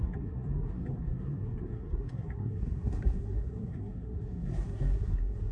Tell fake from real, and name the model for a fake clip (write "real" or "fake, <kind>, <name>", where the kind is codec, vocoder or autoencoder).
fake, codec, SNAC